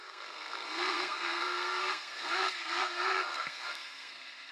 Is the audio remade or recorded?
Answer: remade